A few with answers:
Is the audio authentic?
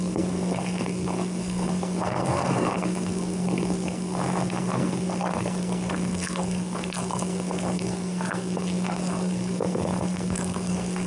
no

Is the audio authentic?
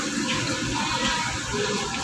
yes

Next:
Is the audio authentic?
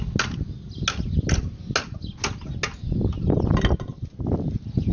yes